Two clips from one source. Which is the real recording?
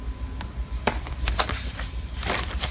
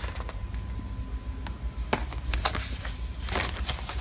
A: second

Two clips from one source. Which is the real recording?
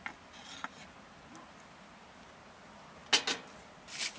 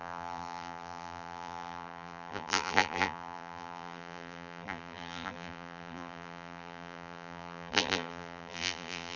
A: first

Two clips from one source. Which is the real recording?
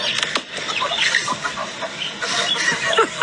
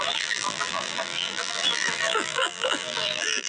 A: first